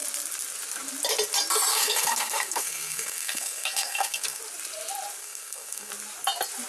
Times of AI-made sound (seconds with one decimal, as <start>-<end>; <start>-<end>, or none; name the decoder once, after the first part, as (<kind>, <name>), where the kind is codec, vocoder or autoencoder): 1.7-4.4 (codec, SNAC); 5.2-5.9